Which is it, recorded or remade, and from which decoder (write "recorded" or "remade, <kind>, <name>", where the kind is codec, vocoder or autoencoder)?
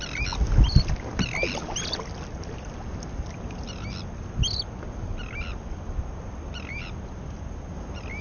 recorded